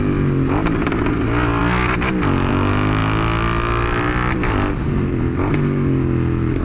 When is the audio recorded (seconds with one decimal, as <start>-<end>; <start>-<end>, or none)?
0.0-3.0; 5.5-6.6